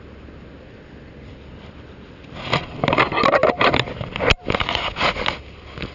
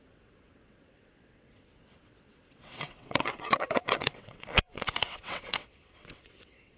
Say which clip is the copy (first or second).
second